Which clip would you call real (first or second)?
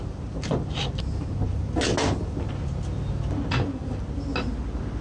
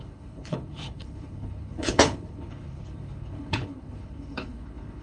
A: first